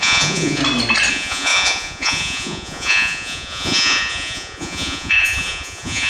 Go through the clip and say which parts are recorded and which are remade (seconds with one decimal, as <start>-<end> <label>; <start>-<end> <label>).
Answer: 0.0-0.6 remade; 0.6-1.1 recorded; 1.1-6.1 remade

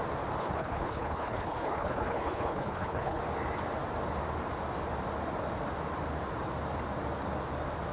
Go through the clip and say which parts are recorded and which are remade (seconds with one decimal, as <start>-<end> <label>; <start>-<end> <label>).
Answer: 0.0-0.4 recorded; 0.4-3.2 remade; 3.2-7.9 recorded

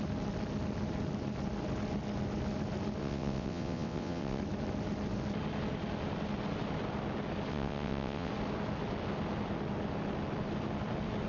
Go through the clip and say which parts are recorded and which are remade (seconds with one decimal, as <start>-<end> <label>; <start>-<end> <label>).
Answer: 0.0-3.0 recorded; 3.0-4.4 remade; 4.4-7.5 recorded; 7.5-8.3 remade; 8.3-11.3 recorded

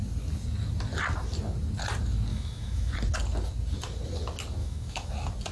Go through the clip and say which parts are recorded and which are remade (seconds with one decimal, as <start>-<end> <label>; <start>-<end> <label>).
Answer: 0.0-2.3 recorded; 2.3-2.9 remade; 2.9-4.6 recorded; 4.6-5.1 remade; 5.1-5.5 recorded

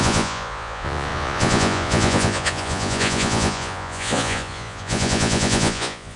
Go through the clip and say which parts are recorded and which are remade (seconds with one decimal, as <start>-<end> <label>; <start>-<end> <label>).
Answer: 0.0-6.2 remade

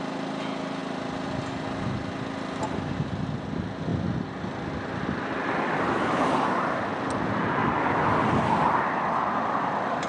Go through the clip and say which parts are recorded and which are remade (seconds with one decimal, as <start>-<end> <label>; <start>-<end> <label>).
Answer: 0.0-10.1 recorded